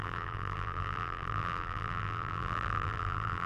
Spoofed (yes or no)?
yes